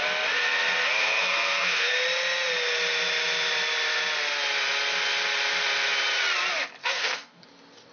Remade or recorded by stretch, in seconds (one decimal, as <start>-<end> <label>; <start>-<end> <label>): 0.0-1.0 recorded; 1.0-1.9 remade; 1.9-6.8 recorded; 6.8-7.4 remade; 7.4-7.9 recorded